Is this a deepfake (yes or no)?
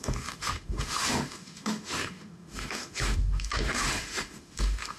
yes